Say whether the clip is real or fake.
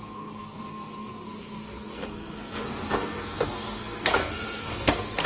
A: fake